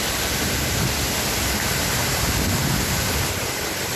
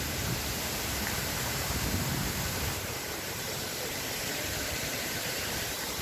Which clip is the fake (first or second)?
second